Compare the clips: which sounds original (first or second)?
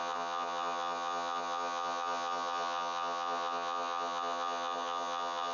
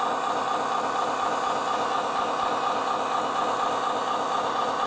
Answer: second